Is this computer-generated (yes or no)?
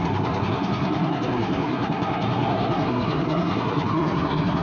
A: yes